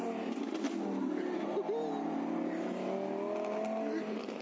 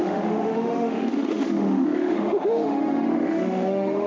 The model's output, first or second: second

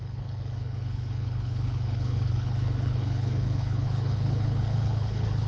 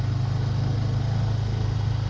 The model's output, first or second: first